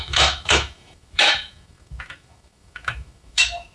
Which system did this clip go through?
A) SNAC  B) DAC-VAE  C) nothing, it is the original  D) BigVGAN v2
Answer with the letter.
B